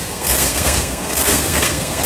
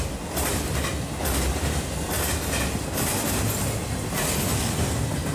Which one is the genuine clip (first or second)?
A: second